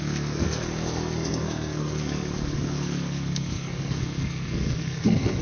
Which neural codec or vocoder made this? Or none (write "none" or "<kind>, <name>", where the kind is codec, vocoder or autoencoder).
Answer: codec, SNAC